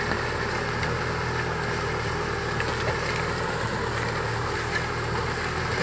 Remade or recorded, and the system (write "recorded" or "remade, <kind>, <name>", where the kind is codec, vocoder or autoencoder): recorded